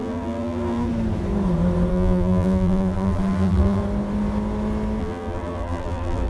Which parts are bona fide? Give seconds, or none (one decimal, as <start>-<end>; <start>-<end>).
0.9-1.9; 3.8-5.0